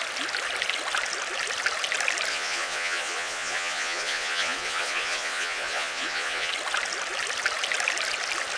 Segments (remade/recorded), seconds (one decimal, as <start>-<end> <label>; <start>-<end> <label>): 0.0-2.3 recorded; 2.3-6.5 remade; 6.5-8.6 recorded